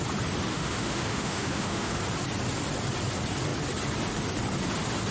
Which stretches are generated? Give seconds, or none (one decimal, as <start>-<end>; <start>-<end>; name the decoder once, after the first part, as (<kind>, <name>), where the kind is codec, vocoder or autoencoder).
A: 0.5-2.0 (autoencoder, DAC-VAE)